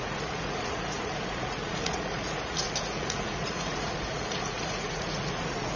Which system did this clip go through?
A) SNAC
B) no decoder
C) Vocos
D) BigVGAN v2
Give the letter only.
C